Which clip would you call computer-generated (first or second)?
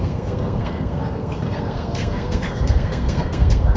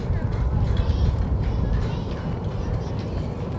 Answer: first